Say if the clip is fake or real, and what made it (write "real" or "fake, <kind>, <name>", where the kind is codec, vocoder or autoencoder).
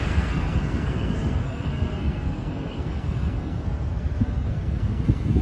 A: fake, codec, SNAC